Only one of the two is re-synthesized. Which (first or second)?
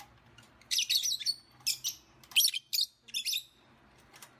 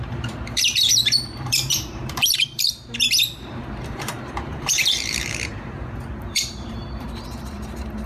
second